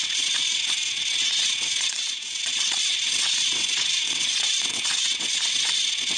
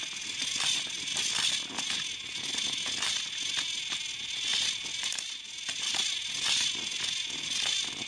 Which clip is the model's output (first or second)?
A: first